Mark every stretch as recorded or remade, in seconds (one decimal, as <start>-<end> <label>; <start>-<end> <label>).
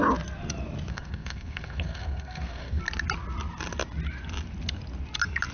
0.0-0.9 recorded; 0.9-2.8 remade; 2.8-5.5 recorded